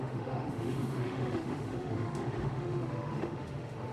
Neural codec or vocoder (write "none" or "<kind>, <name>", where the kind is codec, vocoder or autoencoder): autoencoder, DAC-VAE